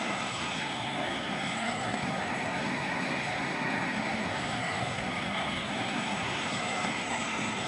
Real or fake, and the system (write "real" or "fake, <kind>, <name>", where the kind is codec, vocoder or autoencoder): fake, codec, SNAC